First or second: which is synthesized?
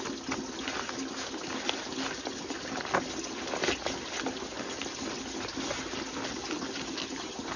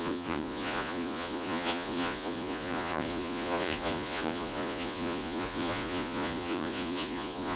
second